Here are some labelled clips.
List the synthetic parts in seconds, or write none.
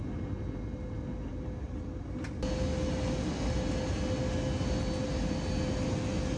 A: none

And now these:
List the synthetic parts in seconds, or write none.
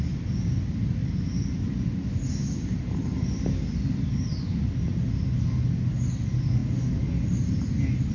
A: none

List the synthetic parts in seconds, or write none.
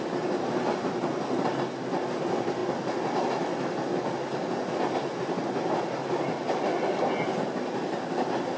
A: none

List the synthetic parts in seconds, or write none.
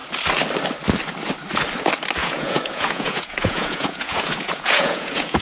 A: 2.2-5.4 (vocoder, Vocos)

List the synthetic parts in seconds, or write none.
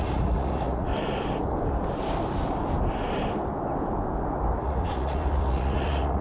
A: 0.0-0.9 (vocoder, Vocos); 4.6-6.2